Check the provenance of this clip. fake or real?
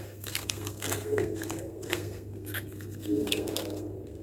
fake